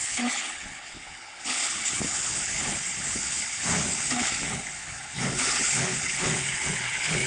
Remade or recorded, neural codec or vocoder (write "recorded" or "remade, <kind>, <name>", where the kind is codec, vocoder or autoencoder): remade, codec, HILCodec